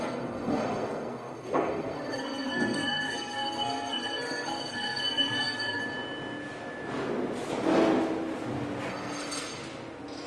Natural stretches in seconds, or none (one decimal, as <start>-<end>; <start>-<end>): 5.8-8.9; 9.6-10.3